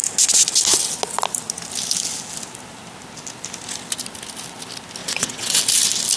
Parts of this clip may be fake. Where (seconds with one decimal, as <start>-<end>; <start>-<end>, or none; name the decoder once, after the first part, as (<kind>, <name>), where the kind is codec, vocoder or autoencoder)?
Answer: 5.0-5.6 (vocoder, WaveNeXt)